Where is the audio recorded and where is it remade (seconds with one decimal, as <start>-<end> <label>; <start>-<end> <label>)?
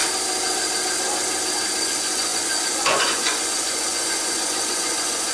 0.0-1.8 recorded; 1.8-5.3 remade